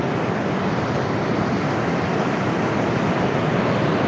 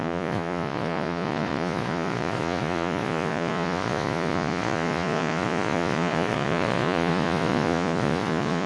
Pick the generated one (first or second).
second